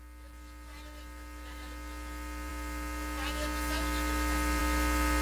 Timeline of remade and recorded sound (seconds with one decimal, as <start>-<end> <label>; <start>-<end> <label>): 0.0-5.2 recorded